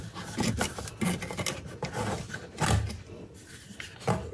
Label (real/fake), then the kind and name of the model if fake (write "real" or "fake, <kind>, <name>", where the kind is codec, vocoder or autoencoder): real